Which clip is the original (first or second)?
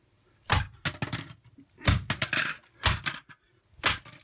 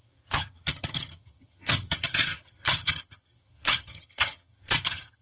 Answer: first